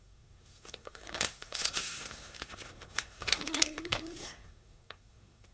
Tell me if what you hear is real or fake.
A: fake